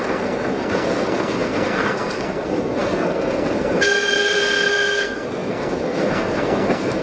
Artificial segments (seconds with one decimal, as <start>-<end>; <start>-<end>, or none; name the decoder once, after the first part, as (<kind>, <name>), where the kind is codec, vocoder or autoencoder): 0.0-7.0 (codec, SNAC)

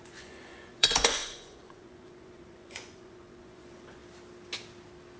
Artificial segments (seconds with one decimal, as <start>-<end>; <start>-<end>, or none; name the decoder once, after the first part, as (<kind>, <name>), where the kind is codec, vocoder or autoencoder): 0.0-4.0 (vocoder, Vocos)

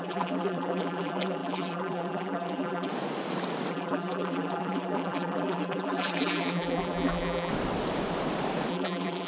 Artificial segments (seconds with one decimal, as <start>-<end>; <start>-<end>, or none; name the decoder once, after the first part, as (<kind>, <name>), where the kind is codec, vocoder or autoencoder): 0.0-2.9 (vocoder, BigVGAN v2); 3.7-7.5; 8.7-9.3

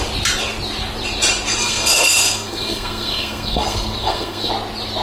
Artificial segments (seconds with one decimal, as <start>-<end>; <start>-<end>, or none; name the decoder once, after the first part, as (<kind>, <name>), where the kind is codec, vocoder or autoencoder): 1.6-4.5 (codec, SNAC)

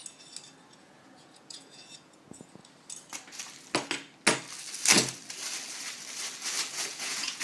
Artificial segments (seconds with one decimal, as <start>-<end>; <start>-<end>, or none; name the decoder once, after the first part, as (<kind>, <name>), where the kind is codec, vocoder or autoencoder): 0.7-2.6 (vocoder, Vocos); 6.7-7.4

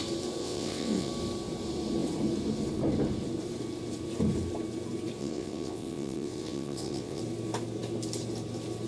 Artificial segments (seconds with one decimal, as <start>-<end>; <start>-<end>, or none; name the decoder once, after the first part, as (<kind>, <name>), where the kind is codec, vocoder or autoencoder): 0.4-1.1 (vocoder, WaveNeXt); 5.2-7.2